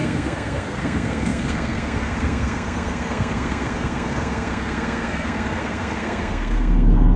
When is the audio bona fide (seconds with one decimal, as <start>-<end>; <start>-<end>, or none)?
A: none